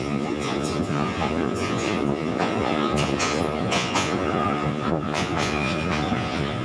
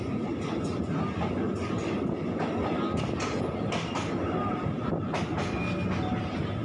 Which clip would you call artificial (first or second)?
first